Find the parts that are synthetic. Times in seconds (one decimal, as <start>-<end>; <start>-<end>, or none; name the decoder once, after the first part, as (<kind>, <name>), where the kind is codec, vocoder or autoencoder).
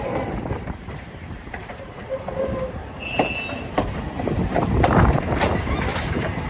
0.0-2.8 (vocoder, BigVGAN v2); 4.5-6.5